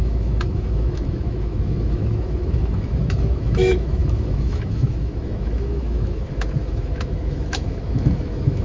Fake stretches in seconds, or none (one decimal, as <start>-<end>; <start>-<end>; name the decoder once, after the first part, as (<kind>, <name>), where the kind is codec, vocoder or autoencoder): 0.0-8.6 (autoencoder, DAC-VAE)